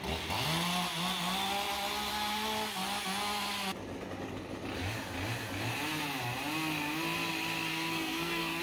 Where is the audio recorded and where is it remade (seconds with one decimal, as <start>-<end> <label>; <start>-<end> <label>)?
0.0-7.7 recorded; 7.7-8.6 remade